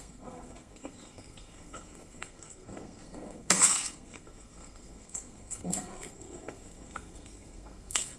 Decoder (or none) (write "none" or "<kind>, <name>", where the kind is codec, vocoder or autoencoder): codec, SNAC